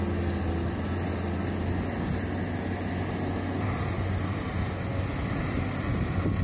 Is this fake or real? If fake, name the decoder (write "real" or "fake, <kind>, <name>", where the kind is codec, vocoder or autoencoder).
real